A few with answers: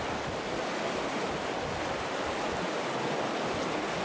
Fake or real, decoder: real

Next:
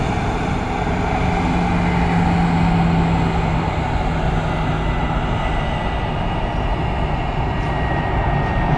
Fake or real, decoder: real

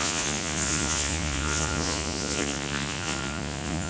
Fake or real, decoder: fake, vocoder, Vocos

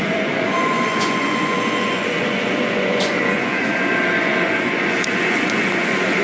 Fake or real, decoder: fake, vocoder, Vocos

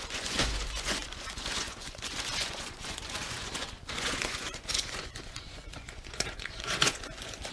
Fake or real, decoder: fake, vocoder, Vocos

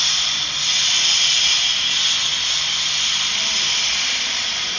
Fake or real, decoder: real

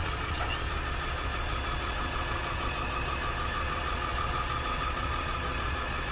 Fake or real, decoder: fake, vocoder, Vocos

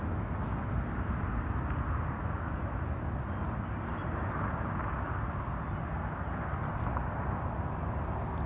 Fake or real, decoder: real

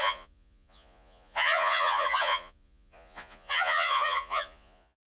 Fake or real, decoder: fake, vocoder, Vocos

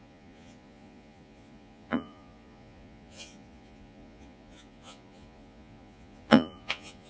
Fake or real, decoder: fake, vocoder, Vocos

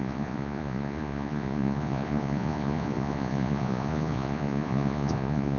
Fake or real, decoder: fake, vocoder, Vocos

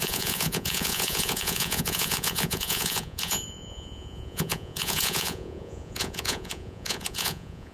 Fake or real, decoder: fake, vocoder, Vocos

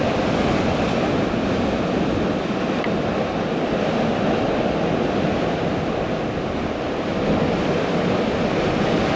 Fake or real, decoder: real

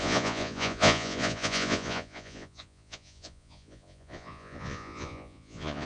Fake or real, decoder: fake, vocoder, Vocos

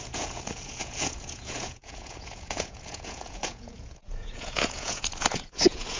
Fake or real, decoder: fake, vocoder, Vocos